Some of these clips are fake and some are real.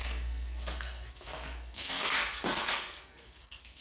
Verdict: fake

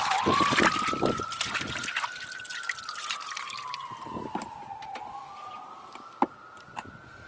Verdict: real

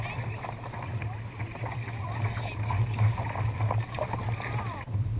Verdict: real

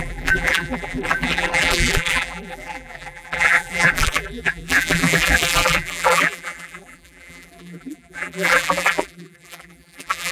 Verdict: fake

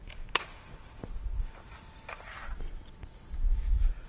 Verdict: real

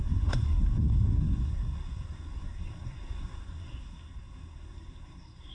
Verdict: fake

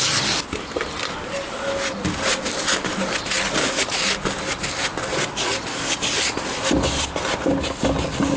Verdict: real